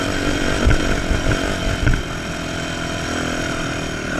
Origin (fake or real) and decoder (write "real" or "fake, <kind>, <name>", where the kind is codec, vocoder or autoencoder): real